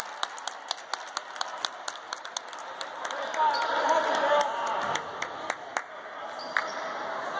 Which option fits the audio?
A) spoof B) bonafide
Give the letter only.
B